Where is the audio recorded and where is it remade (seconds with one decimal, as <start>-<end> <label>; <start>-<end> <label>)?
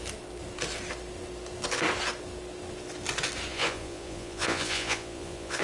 0.0-3.5 recorded; 3.5-5.6 remade